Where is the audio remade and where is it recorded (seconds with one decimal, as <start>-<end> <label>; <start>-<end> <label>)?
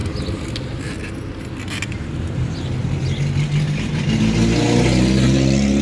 0.0-5.8 recorded